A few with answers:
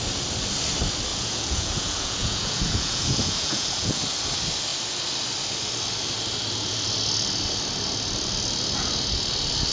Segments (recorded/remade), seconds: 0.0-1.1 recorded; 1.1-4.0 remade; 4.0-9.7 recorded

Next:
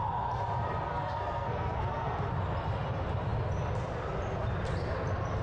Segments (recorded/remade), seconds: 0.0-0.9 recorded; 0.9-2.3 remade; 2.3-5.4 recorded

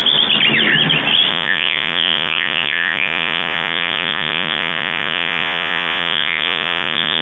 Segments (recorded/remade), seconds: 0.0-1.3 recorded; 1.3-7.2 remade

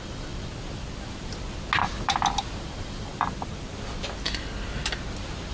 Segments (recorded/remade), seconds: 0.0-0.5 remade; 0.5-2.6 recorded; 2.6-3.1 remade; 3.1-5.5 recorded

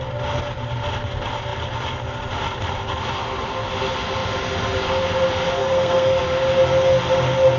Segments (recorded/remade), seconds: 0.0-5.6 recorded; 5.6-6.2 remade; 6.2-7.6 recorded

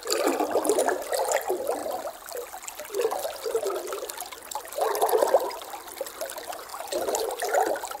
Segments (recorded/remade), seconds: 0.0-8.0 recorded

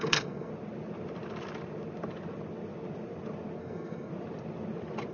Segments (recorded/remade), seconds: 0.0-0.5 remade; 0.5-3.6 recorded; 3.6-4.1 remade; 4.1-5.1 recorded